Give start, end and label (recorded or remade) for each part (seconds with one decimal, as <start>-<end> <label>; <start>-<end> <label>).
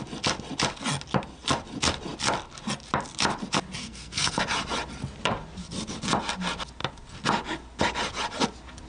0.0-3.8 recorded; 3.8-4.4 remade; 4.4-8.9 recorded